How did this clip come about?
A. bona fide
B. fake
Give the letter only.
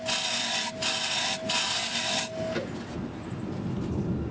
A